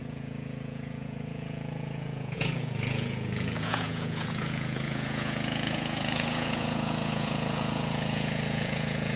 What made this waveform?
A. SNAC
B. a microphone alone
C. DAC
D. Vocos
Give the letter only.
D